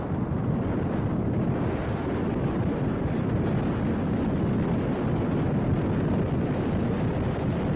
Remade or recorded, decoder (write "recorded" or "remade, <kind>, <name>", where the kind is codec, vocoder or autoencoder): recorded